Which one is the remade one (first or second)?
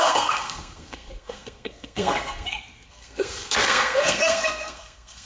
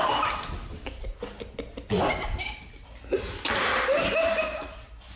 first